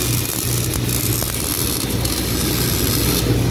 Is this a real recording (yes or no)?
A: yes